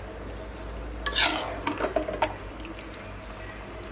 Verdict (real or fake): real